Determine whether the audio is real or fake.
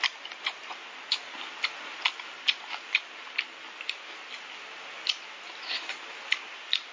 real